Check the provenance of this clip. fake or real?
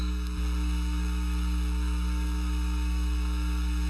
fake